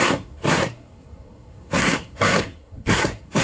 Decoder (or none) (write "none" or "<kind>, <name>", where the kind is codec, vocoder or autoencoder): codec, SNAC